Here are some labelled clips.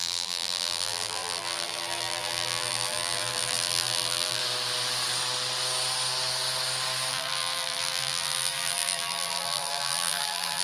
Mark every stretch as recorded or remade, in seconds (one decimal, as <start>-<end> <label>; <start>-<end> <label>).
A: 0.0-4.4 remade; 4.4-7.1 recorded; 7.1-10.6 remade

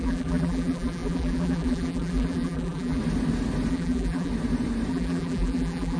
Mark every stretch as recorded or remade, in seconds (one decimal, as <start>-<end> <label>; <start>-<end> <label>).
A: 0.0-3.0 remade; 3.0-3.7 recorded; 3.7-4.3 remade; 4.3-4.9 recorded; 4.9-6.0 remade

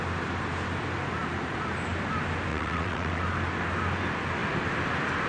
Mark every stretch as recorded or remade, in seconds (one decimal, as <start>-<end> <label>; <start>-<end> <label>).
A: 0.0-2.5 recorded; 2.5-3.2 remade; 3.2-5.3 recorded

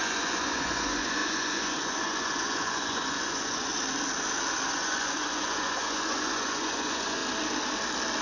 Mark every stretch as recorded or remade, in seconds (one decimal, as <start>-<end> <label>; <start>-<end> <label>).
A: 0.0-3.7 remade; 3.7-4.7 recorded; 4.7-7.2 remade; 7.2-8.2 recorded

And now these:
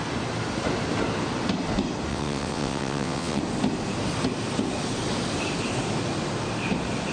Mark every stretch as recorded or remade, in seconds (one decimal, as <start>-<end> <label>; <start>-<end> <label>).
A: 0.0-2.1 recorded; 2.1-3.4 remade; 3.4-7.1 recorded